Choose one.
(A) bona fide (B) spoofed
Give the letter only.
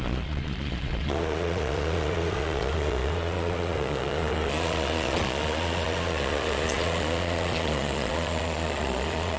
B